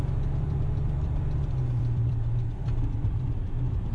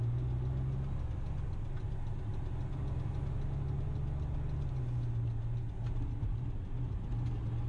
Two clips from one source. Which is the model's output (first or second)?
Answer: first